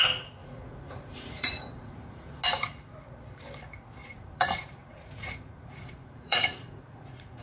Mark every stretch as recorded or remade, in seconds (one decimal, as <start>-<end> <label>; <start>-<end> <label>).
0.0-0.4 recorded; 0.4-2.4 remade; 2.4-4.0 recorded; 4.0-7.4 remade